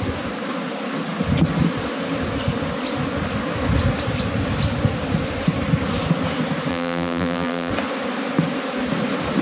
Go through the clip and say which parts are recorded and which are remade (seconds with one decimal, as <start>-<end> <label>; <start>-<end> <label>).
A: 0.0-6.7 recorded; 6.7-7.7 remade; 7.7-9.4 recorded